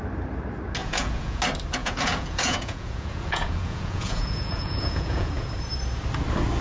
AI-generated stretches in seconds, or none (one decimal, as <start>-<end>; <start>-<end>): 0.8-1.4; 1.8-5.4